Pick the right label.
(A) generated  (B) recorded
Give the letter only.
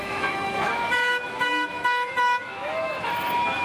A